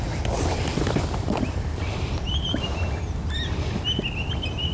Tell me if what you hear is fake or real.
real